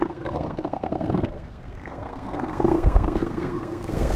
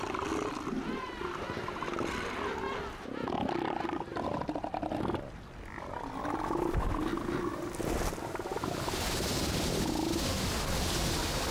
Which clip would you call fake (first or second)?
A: first